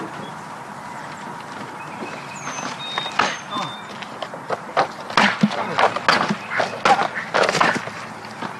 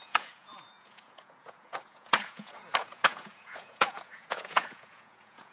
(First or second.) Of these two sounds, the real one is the first